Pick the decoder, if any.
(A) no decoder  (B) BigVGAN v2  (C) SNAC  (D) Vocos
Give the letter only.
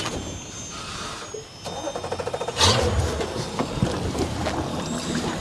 A